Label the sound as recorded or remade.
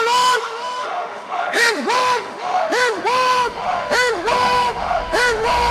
remade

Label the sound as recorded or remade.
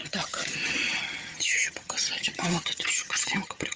remade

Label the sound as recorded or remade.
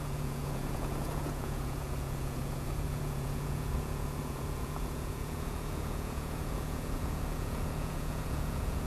remade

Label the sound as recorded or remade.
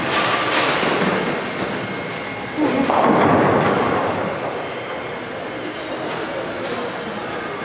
recorded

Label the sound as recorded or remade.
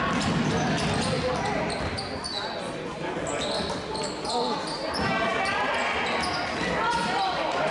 recorded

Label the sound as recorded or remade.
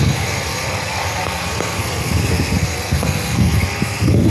remade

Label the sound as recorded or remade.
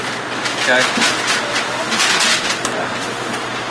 recorded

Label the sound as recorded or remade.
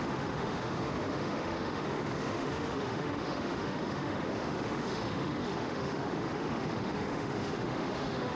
remade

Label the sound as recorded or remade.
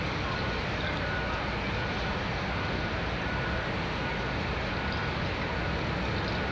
recorded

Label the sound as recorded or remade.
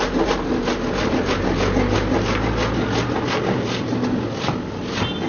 recorded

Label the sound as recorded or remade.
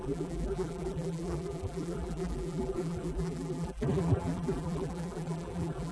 remade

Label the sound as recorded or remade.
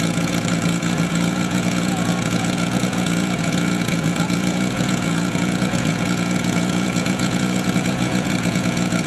remade